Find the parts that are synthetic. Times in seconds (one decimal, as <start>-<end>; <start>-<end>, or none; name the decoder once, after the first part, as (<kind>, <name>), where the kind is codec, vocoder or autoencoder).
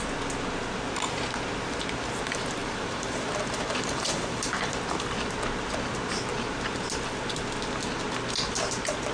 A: 2.6-4.7 (vocoder, BigVGAN v2)